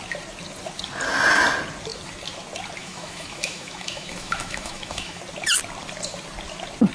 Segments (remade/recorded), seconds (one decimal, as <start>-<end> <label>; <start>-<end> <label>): 0.0-2.8 recorded; 2.8-5.2 remade; 5.2-6.9 recorded